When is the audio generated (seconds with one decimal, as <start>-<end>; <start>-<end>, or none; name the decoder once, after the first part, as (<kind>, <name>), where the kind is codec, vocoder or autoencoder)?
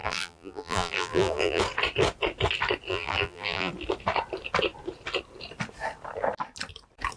0.0-1.6 (vocoder, BigVGAN v2); 2.9-3.7